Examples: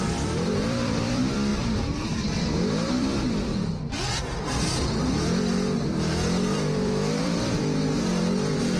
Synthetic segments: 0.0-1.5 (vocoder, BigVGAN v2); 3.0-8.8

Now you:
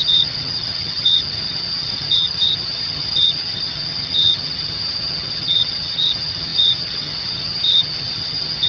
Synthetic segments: 0.0-8.7 (vocoder, HiFi-GAN)

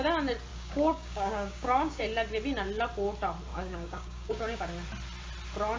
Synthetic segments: 0.5-2.0 (codec, DAC); 3.5-4.6